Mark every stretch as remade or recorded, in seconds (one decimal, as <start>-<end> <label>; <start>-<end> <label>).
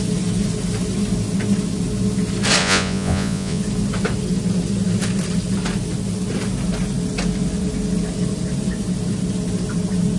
0.0-2.6 recorded; 2.6-3.6 remade; 3.6-10.2 recorded